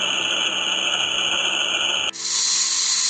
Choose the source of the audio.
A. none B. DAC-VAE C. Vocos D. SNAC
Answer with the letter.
A